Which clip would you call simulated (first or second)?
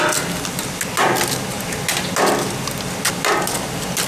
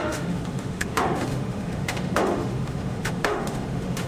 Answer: second